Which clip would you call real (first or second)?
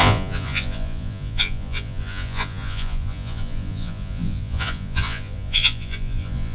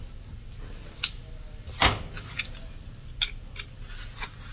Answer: second